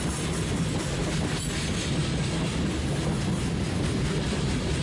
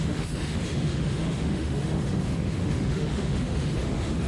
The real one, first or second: first